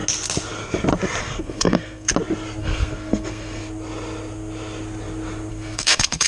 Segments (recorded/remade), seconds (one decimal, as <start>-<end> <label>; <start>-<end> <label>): 0.0-1.2 recorded; 1.2-2.1 remade; 2.1-2.6 recorded; 2.6-3.6 remade; 3.6-5.5 recorded; 5.5-6.3 remade